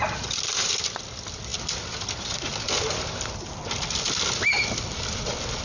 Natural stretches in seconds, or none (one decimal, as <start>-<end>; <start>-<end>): 0.0-5.6